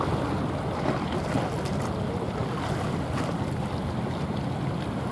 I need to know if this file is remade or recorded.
recorded